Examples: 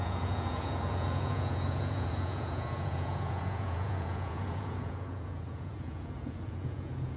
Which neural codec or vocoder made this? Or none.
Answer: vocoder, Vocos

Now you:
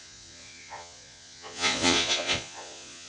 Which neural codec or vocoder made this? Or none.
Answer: vocoder, Vocos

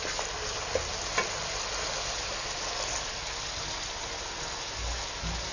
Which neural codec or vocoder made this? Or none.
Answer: none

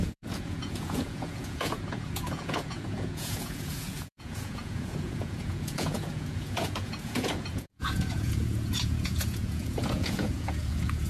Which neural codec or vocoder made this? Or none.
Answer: vocoder, Vocos